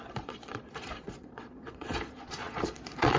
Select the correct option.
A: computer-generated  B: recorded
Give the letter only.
A